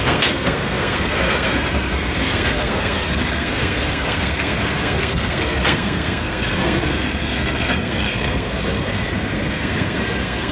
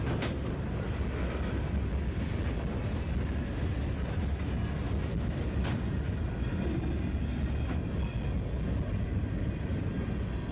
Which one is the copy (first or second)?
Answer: first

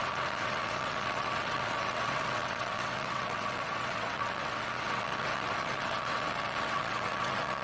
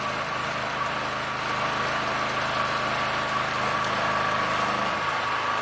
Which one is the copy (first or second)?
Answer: first